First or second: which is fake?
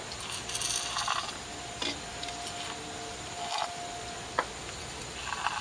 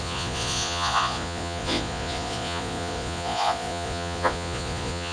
second